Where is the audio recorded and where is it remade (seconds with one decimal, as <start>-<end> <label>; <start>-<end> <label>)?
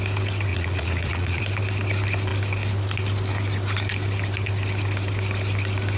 0.0-0.5 recorded; 0.5-1.4 remade; 1.4-6.0 recorded